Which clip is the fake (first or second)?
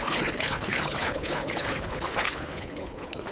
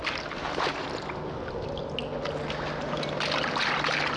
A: first